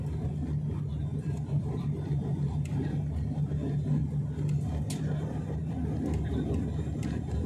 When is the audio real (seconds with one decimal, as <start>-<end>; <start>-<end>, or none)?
0.0-1.1; 2.8-7.5